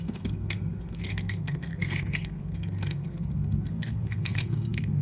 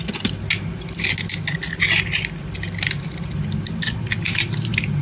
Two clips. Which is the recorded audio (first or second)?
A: second